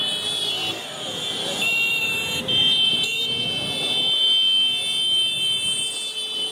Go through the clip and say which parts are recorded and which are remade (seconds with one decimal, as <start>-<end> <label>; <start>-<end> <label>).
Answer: 0.0-1.9 recorded; 1.9-3.2 remade; 3.2-6.5 recorded